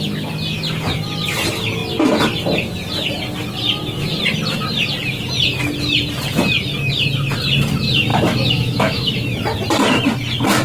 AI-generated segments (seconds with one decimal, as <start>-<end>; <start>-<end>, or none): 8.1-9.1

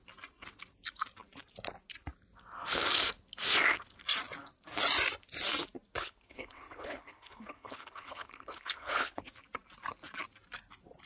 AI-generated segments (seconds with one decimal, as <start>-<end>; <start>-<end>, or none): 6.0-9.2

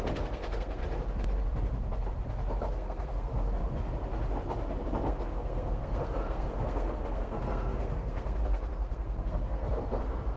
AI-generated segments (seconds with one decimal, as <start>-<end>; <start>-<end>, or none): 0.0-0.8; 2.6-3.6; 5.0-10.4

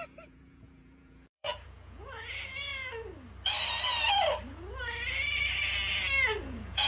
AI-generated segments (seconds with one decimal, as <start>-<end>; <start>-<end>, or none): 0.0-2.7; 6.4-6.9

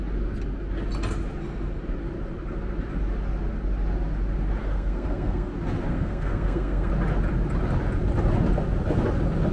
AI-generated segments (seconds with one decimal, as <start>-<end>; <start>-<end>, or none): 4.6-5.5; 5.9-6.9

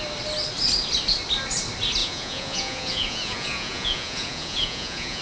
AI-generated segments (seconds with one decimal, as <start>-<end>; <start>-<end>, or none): 2.0-5.2

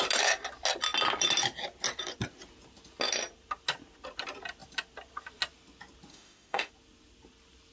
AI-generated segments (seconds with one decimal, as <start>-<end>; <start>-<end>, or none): 6.1-6.7

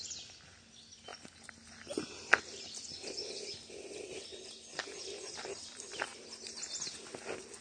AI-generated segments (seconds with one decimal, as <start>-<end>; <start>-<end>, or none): none